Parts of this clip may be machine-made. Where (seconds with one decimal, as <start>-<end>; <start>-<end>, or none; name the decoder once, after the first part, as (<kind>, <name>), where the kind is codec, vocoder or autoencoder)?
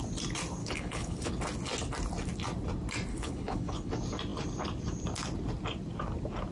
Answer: 0.6-1.3 (codec, HILCodec); 3.1-3.9